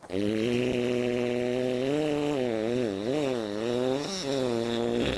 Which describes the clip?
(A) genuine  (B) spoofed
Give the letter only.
A